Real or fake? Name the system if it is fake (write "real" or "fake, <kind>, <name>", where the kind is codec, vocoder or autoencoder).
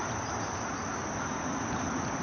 real